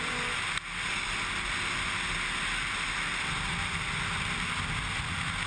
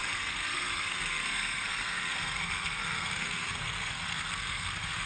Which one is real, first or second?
first